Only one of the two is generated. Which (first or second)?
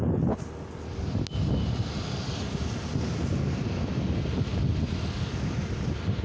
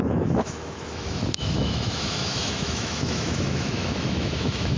second